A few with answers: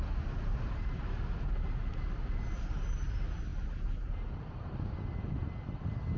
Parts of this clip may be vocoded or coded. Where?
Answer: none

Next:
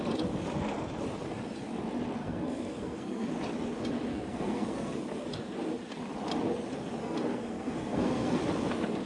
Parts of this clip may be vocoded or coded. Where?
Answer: 2.2-3.3 (codec, SNAC); 4.1-5.0; 7.0-8.4